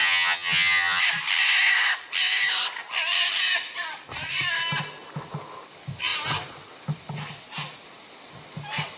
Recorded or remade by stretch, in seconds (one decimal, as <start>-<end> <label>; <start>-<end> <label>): 0.0-1.0 remade; 1.0-9.0 recorded